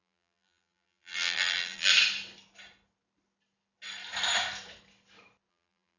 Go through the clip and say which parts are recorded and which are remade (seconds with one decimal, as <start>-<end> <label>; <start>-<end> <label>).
0.0-1.9 remade; 1.9-5.5 recorded; 5.5-6.0 remade